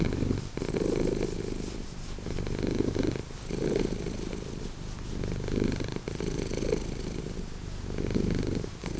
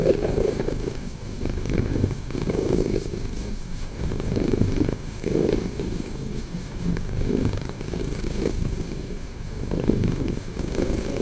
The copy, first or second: second